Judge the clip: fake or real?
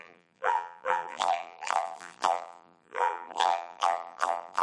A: fake